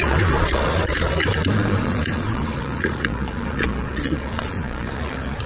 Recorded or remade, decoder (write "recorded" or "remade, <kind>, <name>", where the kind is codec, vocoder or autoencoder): remade, vocoder, Vocos